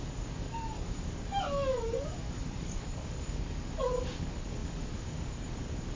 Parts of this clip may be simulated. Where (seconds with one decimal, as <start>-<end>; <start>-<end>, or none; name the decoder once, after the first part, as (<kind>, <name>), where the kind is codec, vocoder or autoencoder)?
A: 0.0-6.0 (codec, DAC)